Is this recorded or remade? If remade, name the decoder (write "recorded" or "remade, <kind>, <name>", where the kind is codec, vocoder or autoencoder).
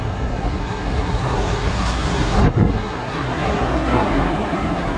remade, codec, SNAC